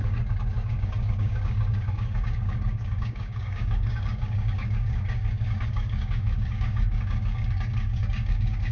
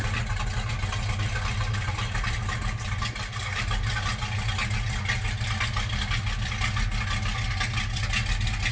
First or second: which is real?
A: second